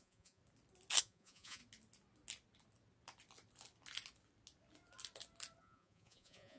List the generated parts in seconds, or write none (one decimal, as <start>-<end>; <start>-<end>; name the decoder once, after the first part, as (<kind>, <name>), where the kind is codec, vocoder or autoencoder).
0.0-0.4 (vocoder, Vocos); 1.0-1.6; 5.6-6.6